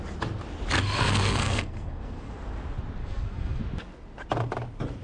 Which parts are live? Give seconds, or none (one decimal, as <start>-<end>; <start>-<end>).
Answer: 0.0-1.0; 2.3-3.0; 3.6-5.0